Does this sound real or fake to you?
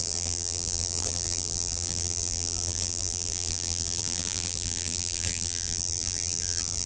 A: fake